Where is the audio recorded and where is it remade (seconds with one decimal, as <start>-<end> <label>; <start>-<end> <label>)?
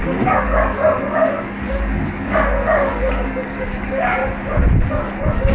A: 0.0-4.2 remade; 4.2-4.9 recorded; 4.9-5.5 remade